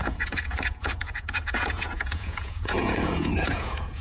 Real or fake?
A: fake